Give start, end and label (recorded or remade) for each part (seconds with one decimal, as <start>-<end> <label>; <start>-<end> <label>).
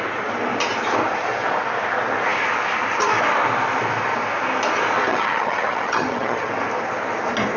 0.0-5.1 recorded; 5.1-6.5 remade; 6.5-7.6 recorded